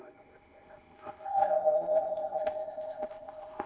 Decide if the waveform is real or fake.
fake